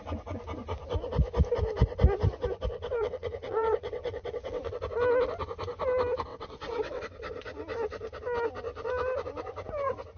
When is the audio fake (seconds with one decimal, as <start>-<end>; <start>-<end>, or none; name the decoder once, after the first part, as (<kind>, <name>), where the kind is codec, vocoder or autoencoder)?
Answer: 2.7-4.8 (vocoder, WaveNeXt); 6.3-7.0